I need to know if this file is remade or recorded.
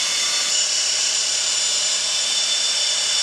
remade